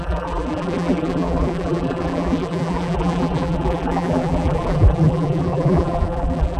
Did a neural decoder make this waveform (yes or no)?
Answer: yes